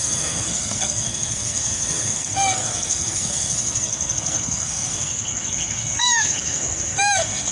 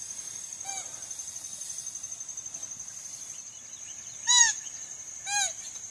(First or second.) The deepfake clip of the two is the first